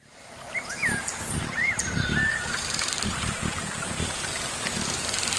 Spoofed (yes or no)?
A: yes